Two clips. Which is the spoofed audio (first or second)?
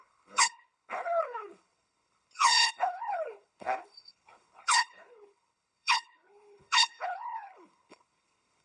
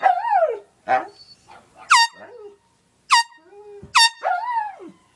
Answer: first